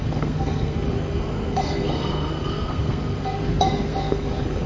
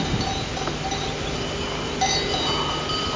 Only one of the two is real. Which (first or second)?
second